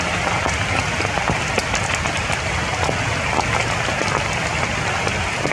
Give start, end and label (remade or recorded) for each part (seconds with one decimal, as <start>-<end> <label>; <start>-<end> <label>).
0.0-1.6 recorded; 1.6-2.5 remade; 2.5-5.5 recorded